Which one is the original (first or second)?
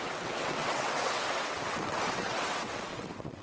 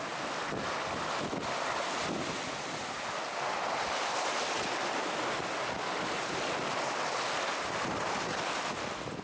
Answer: second